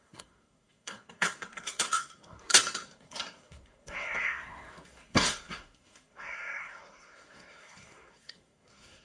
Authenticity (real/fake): fake